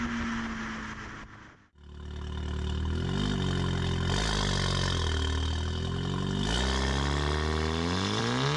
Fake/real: real